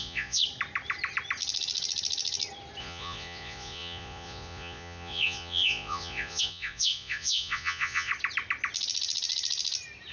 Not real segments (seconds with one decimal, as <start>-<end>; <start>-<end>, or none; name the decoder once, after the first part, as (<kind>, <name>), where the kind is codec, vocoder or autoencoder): 0.0-0.4 (vocoder, Vocos); 2.8-8.1